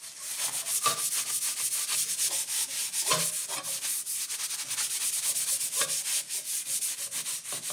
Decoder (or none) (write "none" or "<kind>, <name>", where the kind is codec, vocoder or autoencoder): none